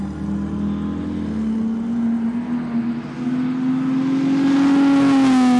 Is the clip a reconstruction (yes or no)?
no